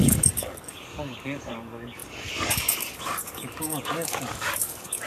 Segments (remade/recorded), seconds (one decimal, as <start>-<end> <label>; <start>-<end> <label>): 0.0-5.1 remade